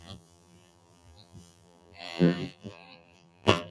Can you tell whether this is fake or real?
fake